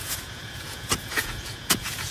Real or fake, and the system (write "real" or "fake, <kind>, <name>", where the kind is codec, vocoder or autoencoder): fake, vocoder, Vocos